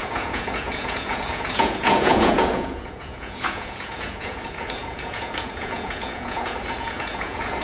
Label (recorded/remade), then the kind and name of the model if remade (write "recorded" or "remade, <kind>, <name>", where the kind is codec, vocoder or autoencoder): remade, vocoder, Vocos